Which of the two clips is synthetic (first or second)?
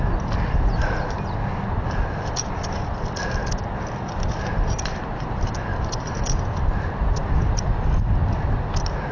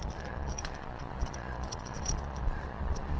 second